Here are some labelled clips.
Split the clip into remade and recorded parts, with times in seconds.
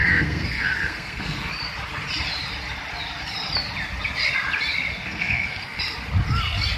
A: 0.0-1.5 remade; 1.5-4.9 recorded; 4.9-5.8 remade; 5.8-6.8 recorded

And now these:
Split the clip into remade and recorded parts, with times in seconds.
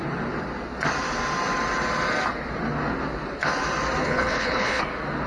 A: 0.0-4.0 recorded; 4.0-4.8 remade; 4.8-5.3 recorded